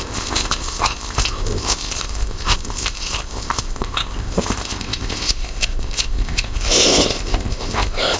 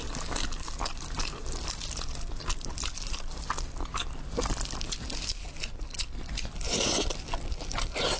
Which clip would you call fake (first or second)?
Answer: first